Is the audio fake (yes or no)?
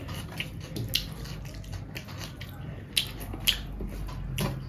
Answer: no